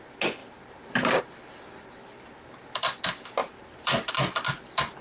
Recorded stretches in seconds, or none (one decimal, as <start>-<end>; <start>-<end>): 0.0-0.4; 1.2-3.4; 4.1-5.0